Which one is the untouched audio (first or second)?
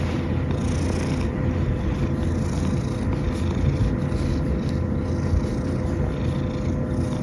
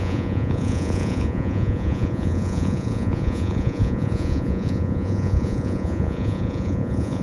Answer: first